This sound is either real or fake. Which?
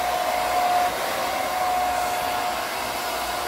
real